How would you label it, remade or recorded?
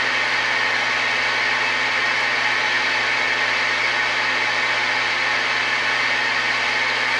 recorded